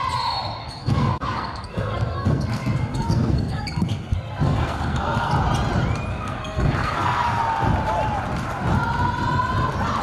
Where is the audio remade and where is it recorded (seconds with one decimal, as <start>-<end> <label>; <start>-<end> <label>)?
0.0-0.6 recorded; 0.6-5.3 remade; 5.3-6.1 recorded; 6.1-7.4 remade; 7.4-10.0 recorded